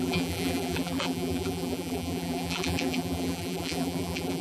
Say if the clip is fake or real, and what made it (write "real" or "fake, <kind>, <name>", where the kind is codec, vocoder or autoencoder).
fake, vocoder, BigVGAN v2